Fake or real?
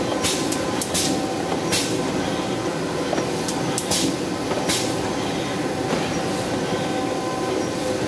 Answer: real